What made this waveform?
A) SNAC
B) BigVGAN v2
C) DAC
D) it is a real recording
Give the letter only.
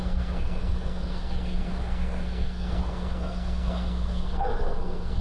A